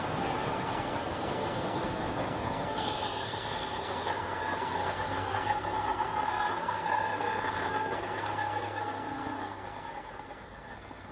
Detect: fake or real fake